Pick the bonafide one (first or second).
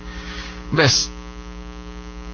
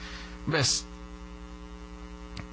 second